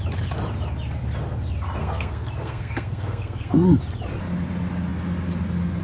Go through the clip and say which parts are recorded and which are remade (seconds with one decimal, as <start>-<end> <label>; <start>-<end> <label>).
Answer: 0.0-1.8 recorded; 1.8-3.8 remade; 3.8-5.8 recorded